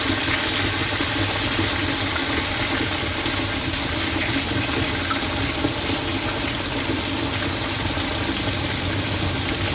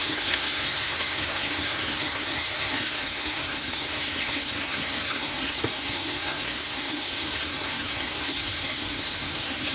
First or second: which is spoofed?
second